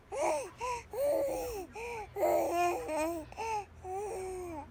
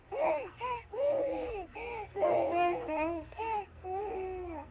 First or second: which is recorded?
first